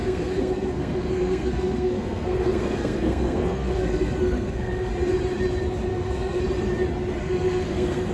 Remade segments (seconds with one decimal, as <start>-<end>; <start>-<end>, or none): 0.0-4.9; 5.9-6.4; 7.2-8.1